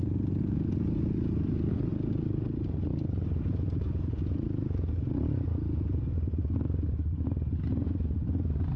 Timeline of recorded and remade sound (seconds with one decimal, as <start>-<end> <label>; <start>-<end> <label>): 0.0-8.8 recorded